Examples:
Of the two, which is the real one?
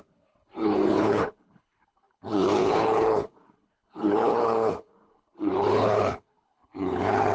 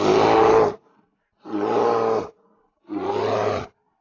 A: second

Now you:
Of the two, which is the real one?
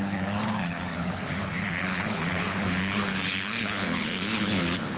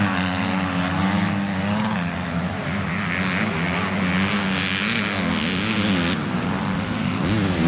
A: second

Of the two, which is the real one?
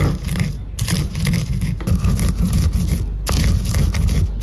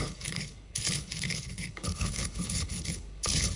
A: first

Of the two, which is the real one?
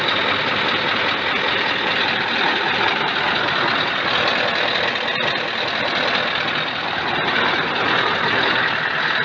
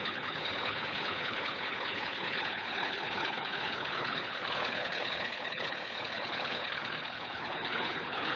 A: first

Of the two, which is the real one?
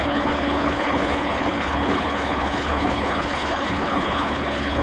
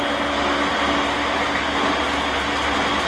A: second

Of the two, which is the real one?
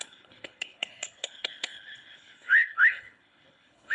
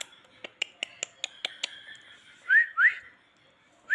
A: second